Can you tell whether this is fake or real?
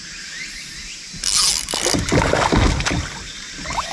real